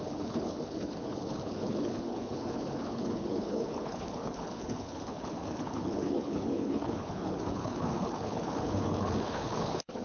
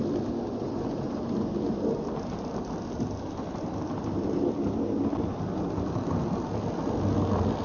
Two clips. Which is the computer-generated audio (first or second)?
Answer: first